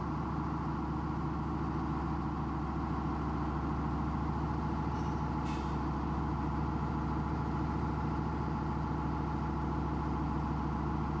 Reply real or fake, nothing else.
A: real